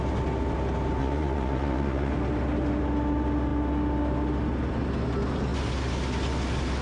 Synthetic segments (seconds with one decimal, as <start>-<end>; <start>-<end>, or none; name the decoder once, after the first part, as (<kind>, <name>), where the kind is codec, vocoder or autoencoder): 1.0-2.1 (vocoder, Vocos)